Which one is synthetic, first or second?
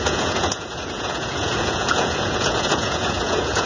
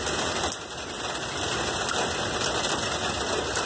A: first